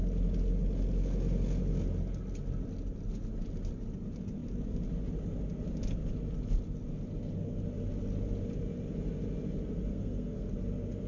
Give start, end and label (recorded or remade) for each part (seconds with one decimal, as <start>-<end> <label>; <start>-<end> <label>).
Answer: 0.0-9.9 recorded; 9.9-10.5 remade; 10.5-11.1 recorded